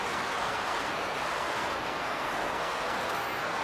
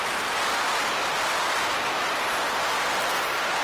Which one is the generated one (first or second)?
first